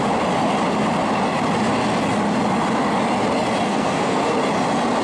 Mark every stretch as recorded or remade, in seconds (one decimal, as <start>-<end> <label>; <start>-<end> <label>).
0.0-3.7 recorded; 3.7-4.2 remade; 4.2-5.0 recorded